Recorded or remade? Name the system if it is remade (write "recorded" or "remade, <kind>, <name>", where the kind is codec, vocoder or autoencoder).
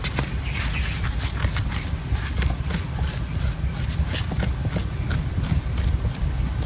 recorded